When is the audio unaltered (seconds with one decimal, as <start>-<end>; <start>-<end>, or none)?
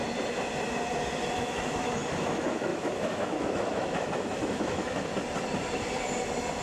0.0-1.2; 5.1-6.6